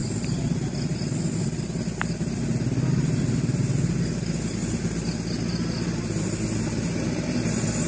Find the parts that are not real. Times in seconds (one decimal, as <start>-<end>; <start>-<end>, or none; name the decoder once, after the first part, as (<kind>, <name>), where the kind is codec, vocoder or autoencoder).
none